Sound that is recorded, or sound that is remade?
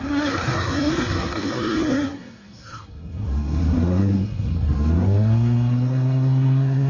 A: remade